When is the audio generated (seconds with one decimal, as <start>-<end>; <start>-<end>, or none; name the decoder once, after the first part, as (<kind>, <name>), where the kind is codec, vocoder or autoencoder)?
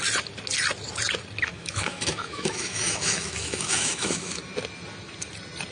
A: 1.5-4.4 (autoencoder, DAC-VAE)